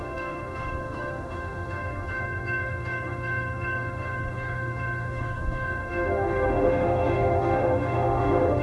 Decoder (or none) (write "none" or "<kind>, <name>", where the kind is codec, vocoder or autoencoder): autoencoder, DAC-VAE